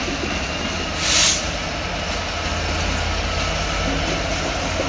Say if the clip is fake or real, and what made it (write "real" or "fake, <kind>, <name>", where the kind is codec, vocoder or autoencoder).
real